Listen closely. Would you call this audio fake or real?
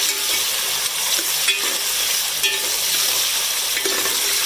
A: real